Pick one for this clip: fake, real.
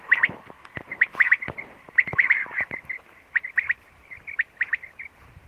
real